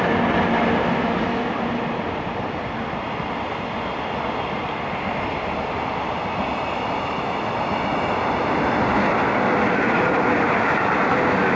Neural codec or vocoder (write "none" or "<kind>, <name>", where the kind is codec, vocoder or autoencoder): none